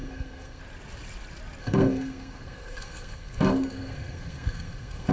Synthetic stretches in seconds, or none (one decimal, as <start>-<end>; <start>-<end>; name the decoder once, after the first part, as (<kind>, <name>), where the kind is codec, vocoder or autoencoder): 0.0-0.6 (codec, SNAC); 1.6-5.1